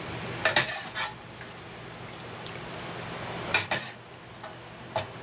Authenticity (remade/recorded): recorded